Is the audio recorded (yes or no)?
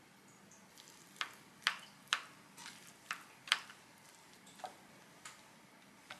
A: yes